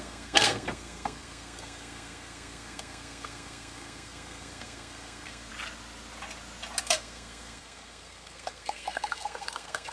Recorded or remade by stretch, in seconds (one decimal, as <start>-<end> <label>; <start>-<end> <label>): 0.0-5.5 remade; 5.5-6.8 recorded; 6.8-9.9 remade